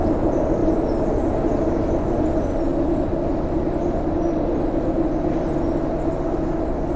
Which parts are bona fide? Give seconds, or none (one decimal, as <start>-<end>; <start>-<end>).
0.0-7.0